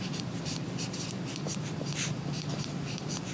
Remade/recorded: remade